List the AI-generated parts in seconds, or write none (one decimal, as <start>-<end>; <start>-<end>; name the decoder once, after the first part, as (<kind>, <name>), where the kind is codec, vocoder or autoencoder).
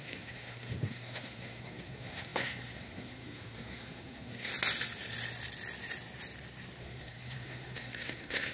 0.0-4.5 (codec, SNAC); 6.8-8.5